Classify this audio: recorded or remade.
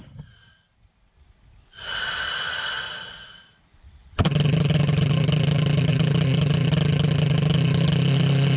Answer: recorded